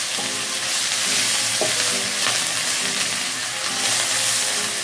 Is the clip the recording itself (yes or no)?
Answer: yes